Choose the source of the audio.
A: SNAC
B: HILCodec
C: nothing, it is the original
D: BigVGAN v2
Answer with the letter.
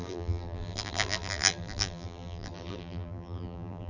D